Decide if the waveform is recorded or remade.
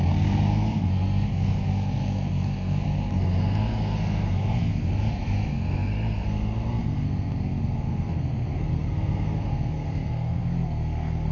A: remade